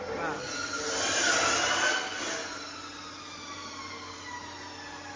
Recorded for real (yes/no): yes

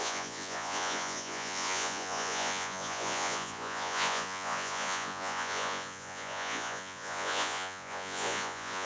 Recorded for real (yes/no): no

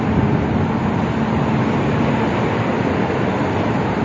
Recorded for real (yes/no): yes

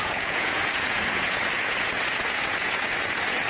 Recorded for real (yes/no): no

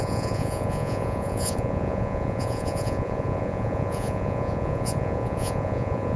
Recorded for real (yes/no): no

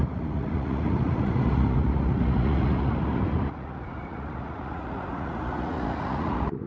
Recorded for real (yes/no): no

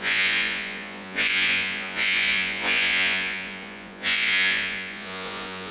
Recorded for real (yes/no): no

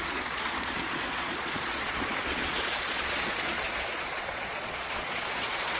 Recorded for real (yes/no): no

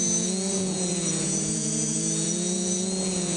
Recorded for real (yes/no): no